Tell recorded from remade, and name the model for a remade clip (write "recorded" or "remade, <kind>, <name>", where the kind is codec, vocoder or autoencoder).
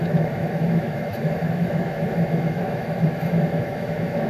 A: remade, autoencoder, DAC-VAE